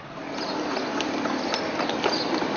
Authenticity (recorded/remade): recorded